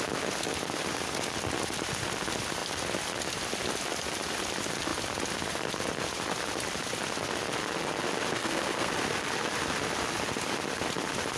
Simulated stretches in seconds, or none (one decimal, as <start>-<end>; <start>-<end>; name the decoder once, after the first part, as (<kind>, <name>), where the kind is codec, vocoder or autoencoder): 8.3-8.9 (codec, SNAC)